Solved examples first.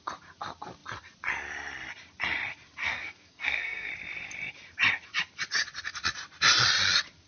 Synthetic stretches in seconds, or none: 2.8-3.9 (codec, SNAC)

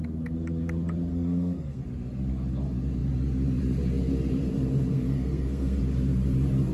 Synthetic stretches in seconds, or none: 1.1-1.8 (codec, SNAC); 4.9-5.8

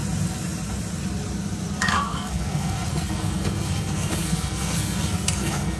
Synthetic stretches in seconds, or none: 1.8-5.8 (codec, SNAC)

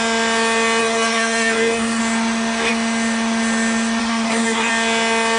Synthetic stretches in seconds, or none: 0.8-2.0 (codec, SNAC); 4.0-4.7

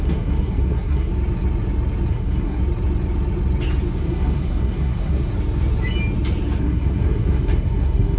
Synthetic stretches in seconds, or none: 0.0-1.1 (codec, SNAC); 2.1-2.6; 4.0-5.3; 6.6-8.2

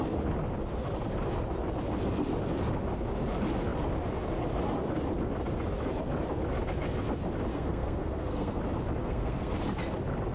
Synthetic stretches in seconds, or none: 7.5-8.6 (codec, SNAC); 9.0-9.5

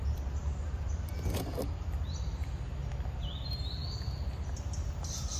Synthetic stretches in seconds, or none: none

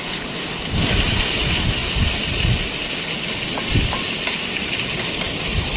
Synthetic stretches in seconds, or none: none